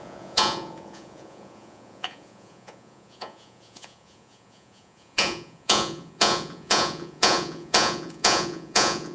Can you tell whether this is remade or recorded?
remade